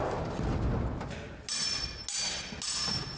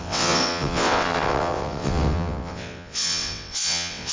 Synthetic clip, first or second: second